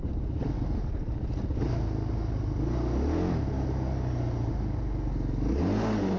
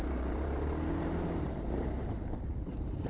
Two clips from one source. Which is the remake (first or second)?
second